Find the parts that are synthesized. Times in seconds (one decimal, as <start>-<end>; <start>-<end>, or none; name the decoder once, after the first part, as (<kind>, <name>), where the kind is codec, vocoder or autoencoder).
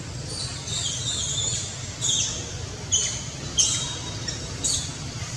none